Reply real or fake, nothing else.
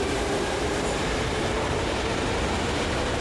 fake